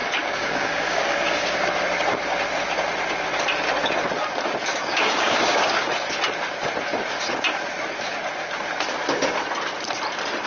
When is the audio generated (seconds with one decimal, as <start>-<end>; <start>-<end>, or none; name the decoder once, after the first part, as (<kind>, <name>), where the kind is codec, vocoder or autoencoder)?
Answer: 0.0-1.7 (codec, DAC); 4.8-5.9